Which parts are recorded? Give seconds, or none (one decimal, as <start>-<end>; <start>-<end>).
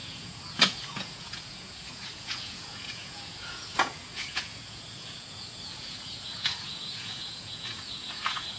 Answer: none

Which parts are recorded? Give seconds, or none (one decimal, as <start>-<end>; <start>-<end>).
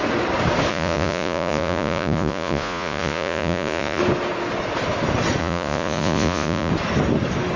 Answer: 0.0-0.7; 4.0-5.4; 6.7-7.6